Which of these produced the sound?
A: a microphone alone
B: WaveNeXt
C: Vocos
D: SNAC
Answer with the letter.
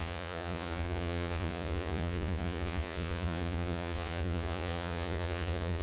C